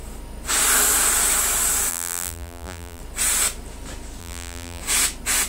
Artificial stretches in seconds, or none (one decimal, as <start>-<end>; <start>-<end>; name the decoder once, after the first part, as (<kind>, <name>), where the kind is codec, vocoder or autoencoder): 1.9-3.0 (vocoder, BigVGAN v2); 4.2-4.8